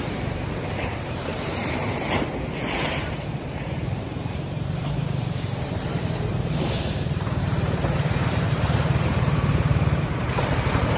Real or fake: fake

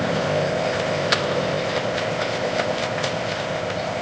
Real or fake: fake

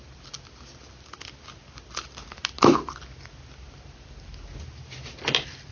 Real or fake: real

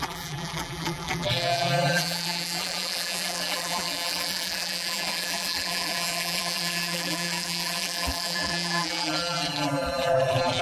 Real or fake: fake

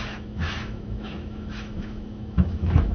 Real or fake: fake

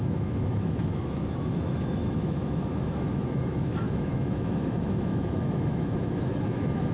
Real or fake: fake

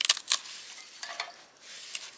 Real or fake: real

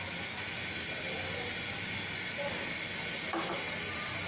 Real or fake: real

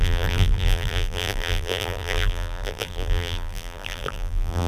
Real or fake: fake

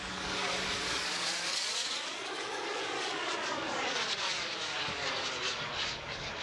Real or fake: fake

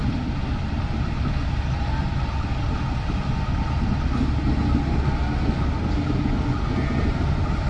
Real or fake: real